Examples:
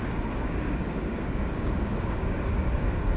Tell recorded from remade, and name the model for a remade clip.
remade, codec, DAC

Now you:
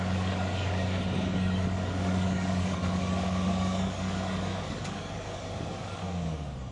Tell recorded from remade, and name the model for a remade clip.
remade, codec, DAC